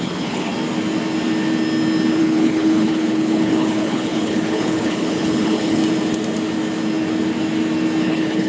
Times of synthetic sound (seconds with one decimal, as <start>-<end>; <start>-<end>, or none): 0.0-0.5; 2.2-5.8; 8.0-8.5